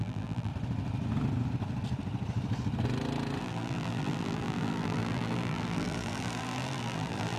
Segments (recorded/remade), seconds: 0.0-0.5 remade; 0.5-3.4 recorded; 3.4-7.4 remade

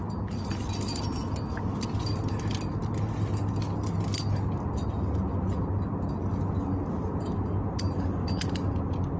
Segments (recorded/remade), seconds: 0.0-9.2 recorded